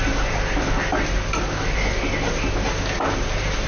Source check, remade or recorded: recorded